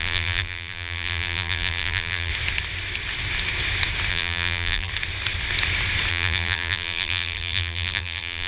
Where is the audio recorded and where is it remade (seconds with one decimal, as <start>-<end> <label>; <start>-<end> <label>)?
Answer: 0.0-2.3 remade; 2.3-4.1 recorded; 4.1-4.9 remade; 4.9-6.1 recorded; 6.1-8.5 remade